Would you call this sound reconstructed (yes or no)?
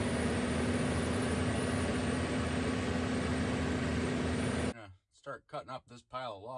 no